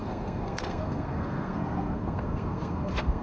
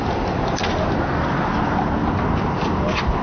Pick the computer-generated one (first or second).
first